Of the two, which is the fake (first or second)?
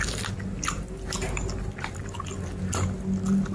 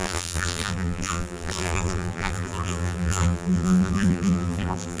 second